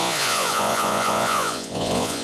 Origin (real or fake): fake